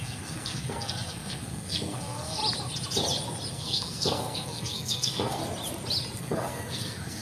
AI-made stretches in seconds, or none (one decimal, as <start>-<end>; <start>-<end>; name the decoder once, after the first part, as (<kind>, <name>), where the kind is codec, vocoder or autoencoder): 0.0-2.4 (codec, SNAC); 3.5-5.4; 6.2-7.2